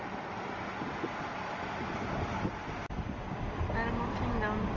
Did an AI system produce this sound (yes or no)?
no